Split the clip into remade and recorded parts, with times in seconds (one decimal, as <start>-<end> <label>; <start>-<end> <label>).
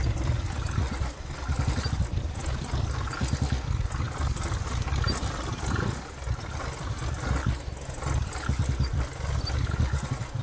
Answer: 0.0-10.4 recorded